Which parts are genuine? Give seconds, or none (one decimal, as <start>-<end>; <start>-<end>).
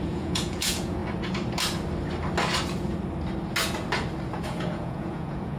1.0-4.4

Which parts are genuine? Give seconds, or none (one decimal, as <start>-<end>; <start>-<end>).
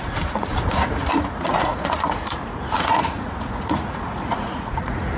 none